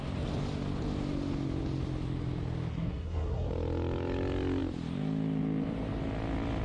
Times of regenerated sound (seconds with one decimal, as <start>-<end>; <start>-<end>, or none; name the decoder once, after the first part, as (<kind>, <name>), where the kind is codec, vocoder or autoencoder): 2.7-3.5 (codec, SNAC)